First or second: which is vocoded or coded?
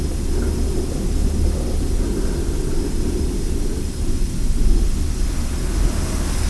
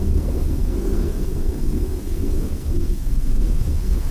second